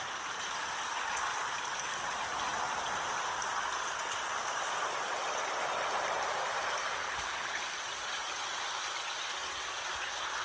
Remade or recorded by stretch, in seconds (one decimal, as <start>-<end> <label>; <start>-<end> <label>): 0.0-7.0 recorded; 7.0-7.6 remade; 7.6-10.4 recorded